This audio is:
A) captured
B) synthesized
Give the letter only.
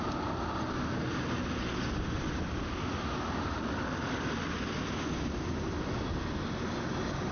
A